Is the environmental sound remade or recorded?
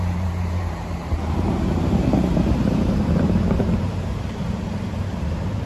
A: remade